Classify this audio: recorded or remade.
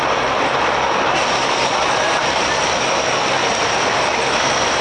remade